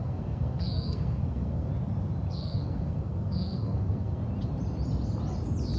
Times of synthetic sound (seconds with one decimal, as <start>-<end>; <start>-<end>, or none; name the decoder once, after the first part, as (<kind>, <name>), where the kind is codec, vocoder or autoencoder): 0.0-1.7 (codec, SNAC); 2.3-4.2